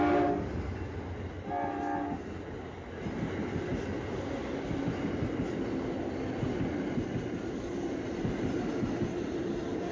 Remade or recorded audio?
recorded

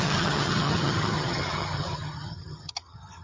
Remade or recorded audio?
remade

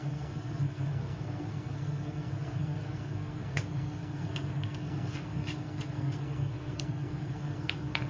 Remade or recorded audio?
remade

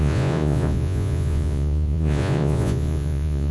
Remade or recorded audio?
remade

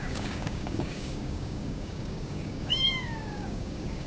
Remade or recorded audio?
remade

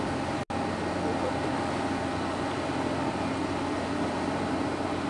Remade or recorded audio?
recorded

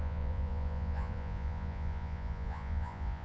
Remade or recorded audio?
remade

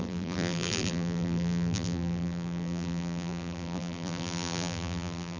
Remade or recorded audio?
remade